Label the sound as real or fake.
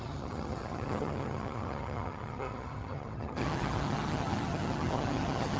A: fake